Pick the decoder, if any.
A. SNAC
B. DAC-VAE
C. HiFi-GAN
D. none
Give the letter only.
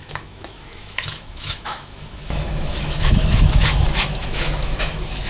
B